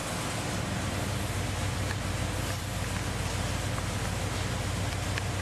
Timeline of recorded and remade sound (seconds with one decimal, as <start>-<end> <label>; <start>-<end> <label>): 0.0-5.4 recorded